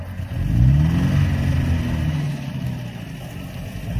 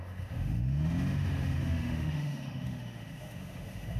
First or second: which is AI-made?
second